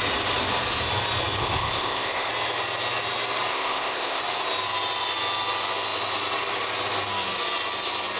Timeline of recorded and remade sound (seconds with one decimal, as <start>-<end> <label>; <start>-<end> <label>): 0.0-1.4 recorded; 1.4-2.3 remade; 2.3-3.5 recorded; 3.5-4.2 remade; 4.2-8.2 recorded